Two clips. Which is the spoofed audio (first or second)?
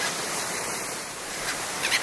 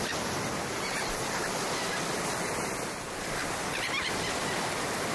first